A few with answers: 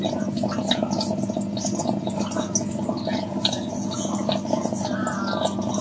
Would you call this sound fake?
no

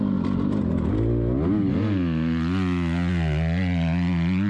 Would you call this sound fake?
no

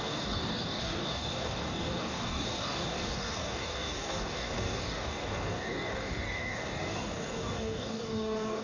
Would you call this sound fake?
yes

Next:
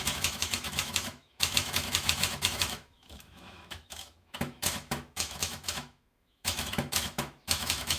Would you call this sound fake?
yes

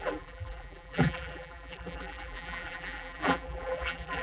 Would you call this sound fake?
yes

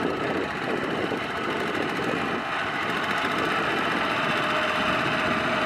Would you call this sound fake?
no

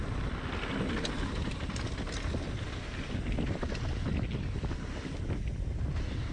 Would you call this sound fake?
no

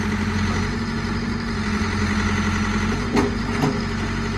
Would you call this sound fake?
no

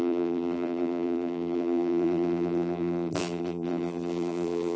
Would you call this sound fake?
yes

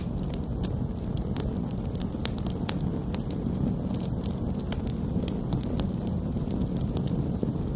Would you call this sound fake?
no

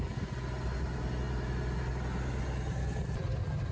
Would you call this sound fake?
no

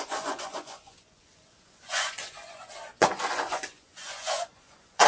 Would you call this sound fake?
yes